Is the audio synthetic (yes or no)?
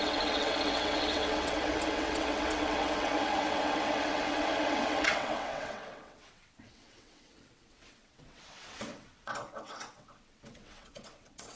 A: yes